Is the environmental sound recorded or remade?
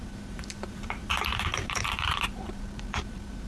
remade